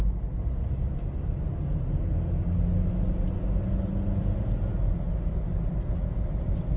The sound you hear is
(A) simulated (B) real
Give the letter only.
B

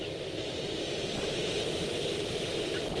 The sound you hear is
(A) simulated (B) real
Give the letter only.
B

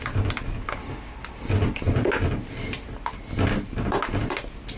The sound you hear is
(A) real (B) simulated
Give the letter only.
A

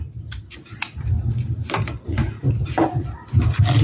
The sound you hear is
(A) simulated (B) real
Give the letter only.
B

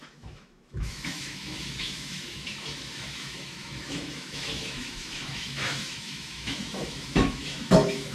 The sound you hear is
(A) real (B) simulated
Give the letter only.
B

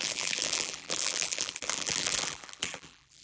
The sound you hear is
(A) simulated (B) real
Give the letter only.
A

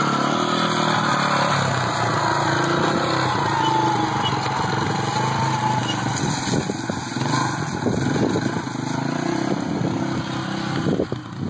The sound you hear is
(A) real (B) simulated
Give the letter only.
A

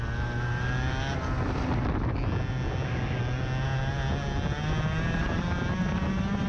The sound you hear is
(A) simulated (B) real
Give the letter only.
B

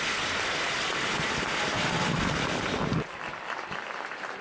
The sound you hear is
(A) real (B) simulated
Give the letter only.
A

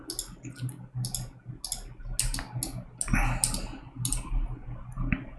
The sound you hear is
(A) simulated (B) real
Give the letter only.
B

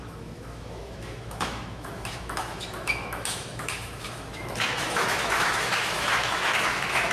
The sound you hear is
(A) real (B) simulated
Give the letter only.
B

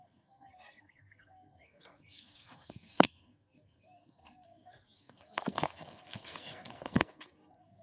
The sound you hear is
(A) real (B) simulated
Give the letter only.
B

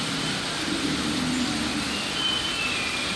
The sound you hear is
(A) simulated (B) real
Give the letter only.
B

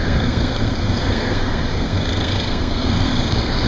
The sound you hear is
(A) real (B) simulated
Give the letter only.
B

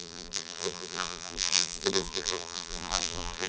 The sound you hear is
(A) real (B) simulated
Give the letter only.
B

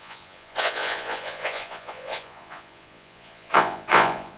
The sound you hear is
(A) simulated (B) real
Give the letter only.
A